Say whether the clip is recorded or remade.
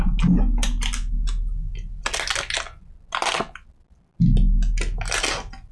recorded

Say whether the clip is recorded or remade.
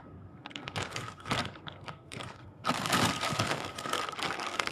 remade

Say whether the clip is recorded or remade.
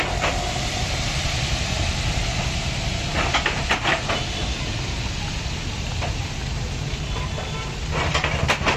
recorded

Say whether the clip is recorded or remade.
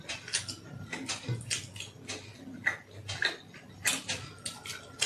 recorded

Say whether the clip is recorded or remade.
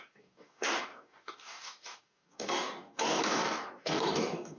remade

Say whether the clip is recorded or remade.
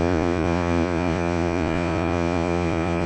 remade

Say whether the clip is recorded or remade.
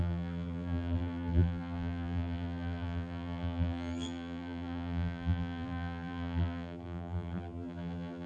remade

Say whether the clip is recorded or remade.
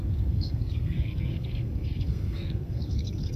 remade